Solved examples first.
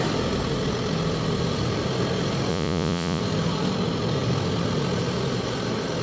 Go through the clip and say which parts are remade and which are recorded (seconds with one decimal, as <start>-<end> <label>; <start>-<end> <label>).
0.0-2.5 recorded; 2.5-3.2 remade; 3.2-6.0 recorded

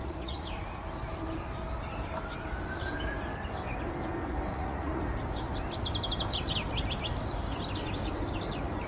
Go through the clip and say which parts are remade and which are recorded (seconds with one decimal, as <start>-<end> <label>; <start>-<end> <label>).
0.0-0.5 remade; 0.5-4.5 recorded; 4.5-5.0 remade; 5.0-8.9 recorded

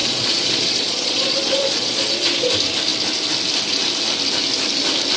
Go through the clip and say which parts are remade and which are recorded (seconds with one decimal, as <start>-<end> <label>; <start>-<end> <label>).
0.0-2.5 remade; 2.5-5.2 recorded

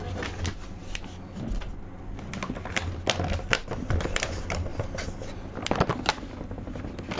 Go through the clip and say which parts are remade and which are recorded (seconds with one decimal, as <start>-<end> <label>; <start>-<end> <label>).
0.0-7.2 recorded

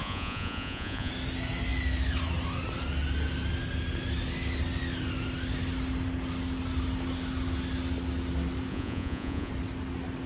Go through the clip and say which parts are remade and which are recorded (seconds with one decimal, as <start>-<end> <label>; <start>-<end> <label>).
0.0-1.1 remade; 1.1-8.7 recorded; 8.7-9.5 remade; 9.5-10.3 recorded